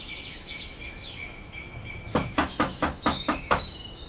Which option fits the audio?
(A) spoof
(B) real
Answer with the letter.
A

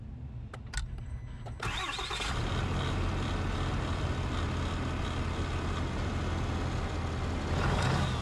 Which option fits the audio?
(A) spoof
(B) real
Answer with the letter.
B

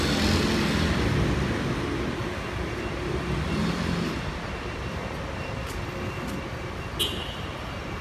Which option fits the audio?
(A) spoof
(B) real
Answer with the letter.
B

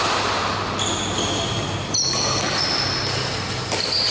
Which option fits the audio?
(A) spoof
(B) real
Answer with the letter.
B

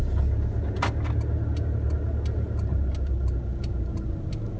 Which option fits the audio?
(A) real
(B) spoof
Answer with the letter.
A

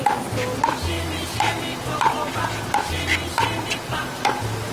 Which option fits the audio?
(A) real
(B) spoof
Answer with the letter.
A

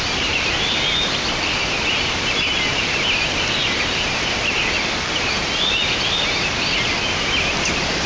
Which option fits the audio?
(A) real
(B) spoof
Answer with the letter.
A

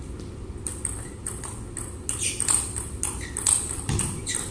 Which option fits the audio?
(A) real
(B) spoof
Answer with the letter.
A